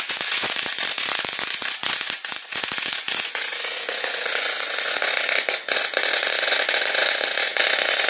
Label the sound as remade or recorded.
remade